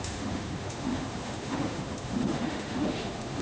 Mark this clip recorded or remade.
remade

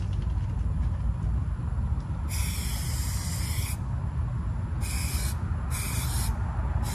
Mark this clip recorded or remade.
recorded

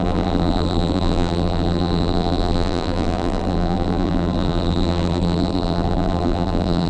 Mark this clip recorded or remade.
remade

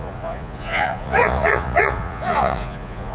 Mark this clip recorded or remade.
remade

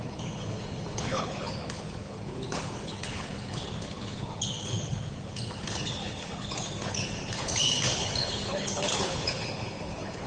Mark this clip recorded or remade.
remade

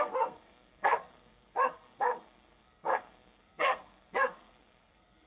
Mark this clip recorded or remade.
remade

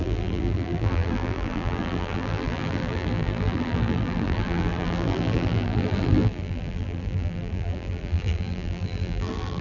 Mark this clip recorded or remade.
remade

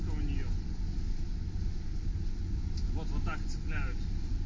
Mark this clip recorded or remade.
recorded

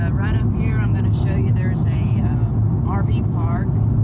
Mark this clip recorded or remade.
recorded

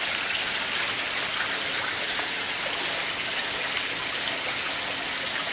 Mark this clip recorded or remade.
recorded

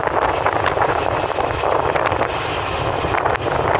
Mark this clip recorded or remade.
recorded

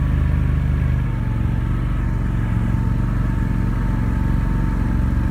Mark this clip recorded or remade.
recorded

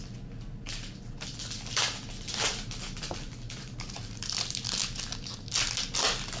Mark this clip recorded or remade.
recorded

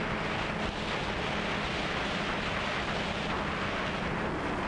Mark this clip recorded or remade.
recorded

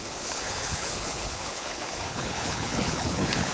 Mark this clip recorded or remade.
remade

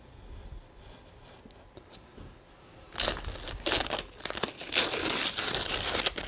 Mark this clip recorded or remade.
recorded